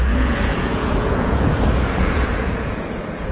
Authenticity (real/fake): fake